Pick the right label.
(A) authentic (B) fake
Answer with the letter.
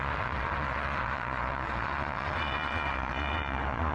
B